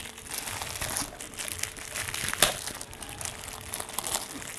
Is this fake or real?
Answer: real